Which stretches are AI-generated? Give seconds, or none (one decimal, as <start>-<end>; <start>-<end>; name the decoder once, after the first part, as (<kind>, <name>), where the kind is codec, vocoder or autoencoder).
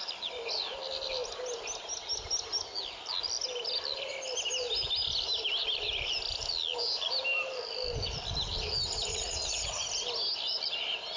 9.1-9.9 (vocoder, Vocos)